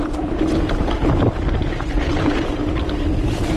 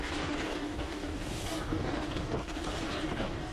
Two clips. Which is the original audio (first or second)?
first